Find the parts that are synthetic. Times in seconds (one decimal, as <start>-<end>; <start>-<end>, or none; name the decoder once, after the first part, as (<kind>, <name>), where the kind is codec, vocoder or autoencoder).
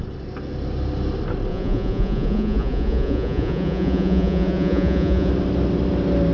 1.5-5.3 (vocoder, Vocos)